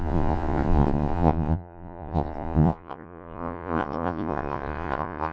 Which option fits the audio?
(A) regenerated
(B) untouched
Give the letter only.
A